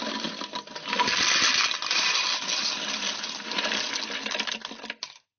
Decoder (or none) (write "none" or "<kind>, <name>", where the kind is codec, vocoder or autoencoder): none